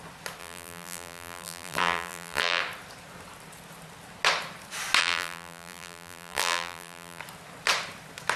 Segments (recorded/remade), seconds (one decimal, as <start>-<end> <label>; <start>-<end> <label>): 0.0-0.4 recorded; 0.4-2.6 remade; 2.6-5.0 recorded; 5.0-7.2 remade; 7.2-8.4 recorded